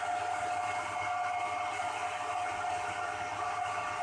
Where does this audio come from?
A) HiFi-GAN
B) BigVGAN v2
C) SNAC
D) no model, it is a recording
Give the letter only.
D